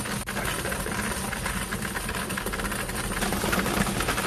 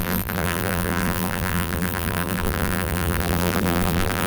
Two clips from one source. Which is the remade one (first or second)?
second